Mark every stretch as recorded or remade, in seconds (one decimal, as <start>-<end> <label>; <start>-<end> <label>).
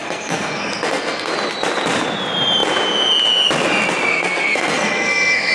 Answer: 0.0-1.3 remade; 1.3-4.1 recorded; 4.1-5.5 remade